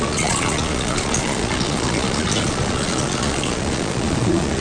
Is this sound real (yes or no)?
no